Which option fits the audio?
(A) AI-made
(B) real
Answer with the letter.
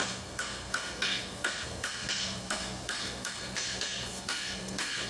A